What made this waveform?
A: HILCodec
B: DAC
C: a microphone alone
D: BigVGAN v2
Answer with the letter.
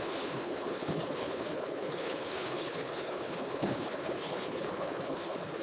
A